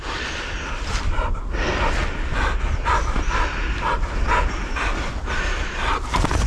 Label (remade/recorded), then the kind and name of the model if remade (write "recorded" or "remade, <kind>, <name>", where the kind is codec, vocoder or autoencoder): recorded